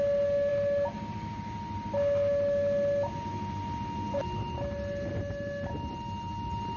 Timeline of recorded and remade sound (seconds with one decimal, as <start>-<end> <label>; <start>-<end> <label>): 0.0-6.8 recorded